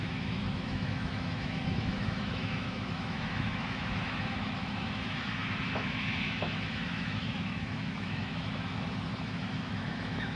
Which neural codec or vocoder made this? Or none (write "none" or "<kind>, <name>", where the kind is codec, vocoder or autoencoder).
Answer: autoencoder, DAC-VAE